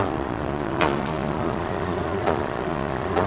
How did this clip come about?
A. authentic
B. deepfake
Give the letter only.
B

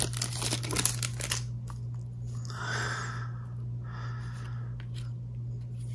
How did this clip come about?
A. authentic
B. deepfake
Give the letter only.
A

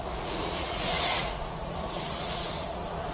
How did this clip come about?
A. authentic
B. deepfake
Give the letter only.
B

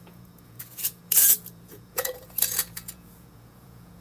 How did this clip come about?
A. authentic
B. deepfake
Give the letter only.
B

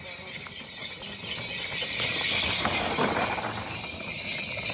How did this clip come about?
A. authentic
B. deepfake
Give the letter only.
A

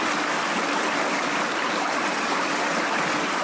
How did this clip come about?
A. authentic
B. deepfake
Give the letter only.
A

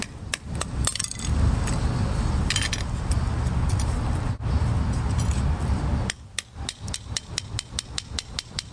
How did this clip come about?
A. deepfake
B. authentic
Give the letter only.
B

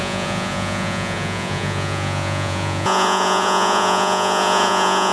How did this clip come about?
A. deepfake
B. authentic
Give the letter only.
A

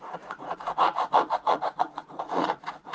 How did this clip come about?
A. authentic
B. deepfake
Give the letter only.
B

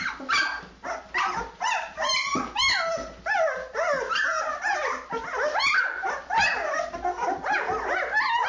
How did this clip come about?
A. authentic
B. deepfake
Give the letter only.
A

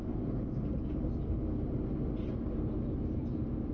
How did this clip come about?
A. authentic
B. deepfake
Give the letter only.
A